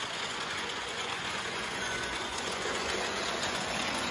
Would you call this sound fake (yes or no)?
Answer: yes